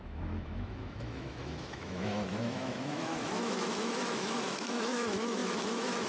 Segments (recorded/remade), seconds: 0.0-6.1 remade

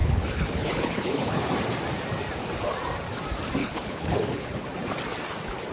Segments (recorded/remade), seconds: 0.0-1.4 remade; 1.4-3.6 recorded; 3.6-4.5 remade; 4.5-5.7 recorded